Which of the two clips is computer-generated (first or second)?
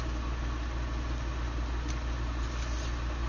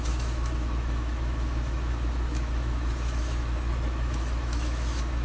second